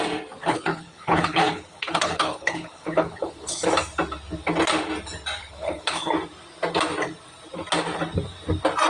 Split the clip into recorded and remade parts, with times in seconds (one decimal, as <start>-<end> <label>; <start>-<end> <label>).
0.0-0.4 recorded; 0.4-3.7 remade; 3.7-5.4 recorded; 5.4-6.1 remade; 6.1-8.9 recorded